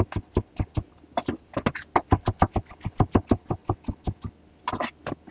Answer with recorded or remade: recorded